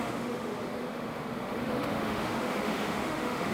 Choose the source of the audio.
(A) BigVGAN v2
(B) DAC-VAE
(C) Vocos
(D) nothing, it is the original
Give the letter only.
B